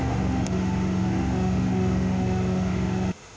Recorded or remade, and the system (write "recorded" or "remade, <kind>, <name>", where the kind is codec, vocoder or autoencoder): remade, autoencoder, DAC-VAE